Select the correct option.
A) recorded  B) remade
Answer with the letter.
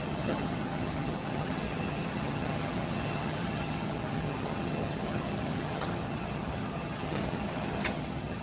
B